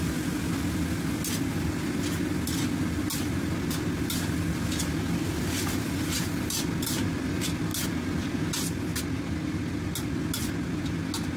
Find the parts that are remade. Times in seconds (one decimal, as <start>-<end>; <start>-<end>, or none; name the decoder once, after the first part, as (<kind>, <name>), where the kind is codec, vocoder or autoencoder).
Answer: none